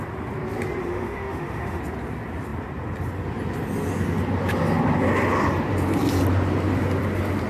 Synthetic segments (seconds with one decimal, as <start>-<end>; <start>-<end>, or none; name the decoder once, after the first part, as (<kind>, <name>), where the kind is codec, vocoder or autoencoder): 0.8-1.8 (autoencoder, DAC-VAE)